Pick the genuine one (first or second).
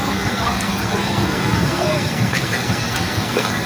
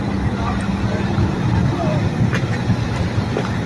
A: second